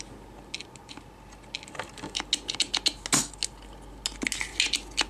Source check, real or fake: real